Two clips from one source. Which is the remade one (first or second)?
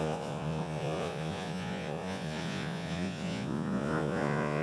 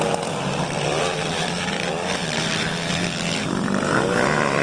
first